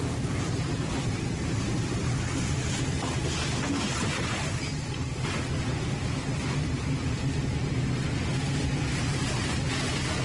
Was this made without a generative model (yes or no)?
no